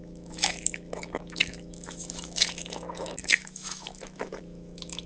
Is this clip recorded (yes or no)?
no